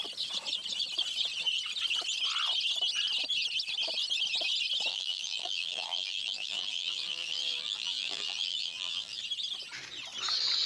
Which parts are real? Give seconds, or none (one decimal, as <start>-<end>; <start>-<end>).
0.0-4.9; 9.2-10.7